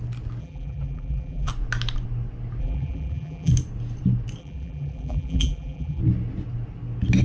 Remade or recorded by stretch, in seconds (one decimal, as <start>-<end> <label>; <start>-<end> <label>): 0.0-0.4 recorded; 0.4-1.5 remade; 1.5-2.6 recorded; 2.6-3.5 remade; 3.5-4.4 recorded; 4.4-6.0 remade; 6.0-7.2 recorded